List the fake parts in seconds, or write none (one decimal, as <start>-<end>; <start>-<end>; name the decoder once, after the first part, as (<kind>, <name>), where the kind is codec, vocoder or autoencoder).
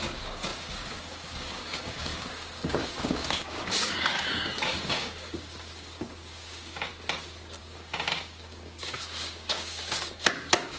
0.0-6.9 (codec, DAC); 7.6-10.8